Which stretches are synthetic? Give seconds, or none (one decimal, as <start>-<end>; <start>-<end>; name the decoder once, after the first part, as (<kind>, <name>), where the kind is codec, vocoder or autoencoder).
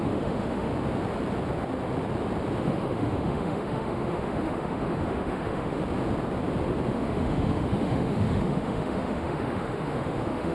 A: 0.0-0.7 (autoencoder, DAC-VAE); 2.6-5.8; 6.9-10.5